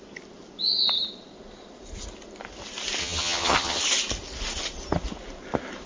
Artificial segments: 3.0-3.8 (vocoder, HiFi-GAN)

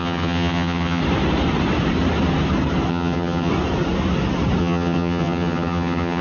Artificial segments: 0.0-1.0 (vocoder, HiFi-GAN); 2.9-3.5; 4.6-6.2